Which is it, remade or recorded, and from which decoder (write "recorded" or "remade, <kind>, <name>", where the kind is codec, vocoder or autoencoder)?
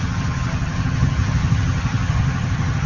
remade, vocoder, HiFi-GAN